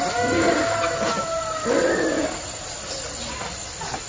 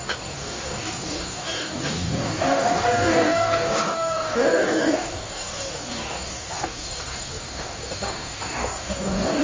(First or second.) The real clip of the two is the first